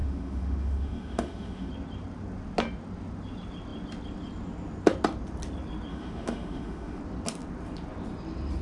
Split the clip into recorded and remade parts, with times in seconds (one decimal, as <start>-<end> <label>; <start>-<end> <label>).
0.0-1.7 remade; 1.7-5.9 recorded; 5.9-7.0 remade; 7.0-8.6 recorded

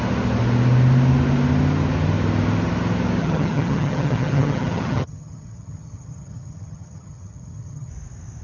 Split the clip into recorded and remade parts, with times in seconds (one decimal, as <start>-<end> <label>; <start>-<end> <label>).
0.0-3.2 recorded; 3.2-7.9 remade; 7.9-8.4 recorded